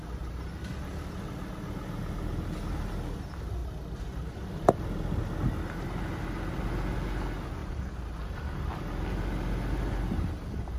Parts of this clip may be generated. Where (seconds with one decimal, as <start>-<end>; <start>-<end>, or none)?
3.6-4.5; 7.6-8.4